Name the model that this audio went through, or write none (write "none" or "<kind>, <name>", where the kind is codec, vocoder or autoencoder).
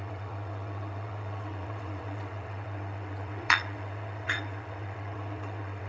vocoder, WaveNeXt